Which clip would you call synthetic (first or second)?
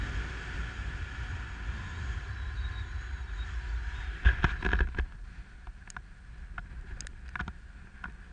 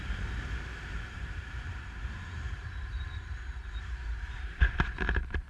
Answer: second